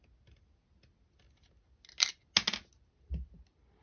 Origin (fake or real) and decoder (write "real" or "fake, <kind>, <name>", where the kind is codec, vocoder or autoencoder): real